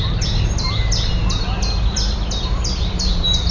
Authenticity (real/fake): real